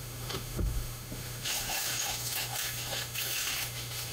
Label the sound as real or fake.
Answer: fake